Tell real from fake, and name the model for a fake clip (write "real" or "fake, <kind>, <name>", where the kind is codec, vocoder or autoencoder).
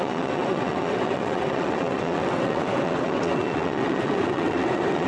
fake, vocoder, WaveNeXt